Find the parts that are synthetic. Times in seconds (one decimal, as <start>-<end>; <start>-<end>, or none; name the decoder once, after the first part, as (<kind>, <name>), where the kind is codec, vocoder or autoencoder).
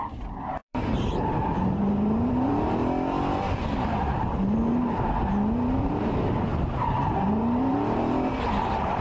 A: 0.0-2.8 (vocoder, BigVGAN v2); 4.1-4.6; 5.8-9.0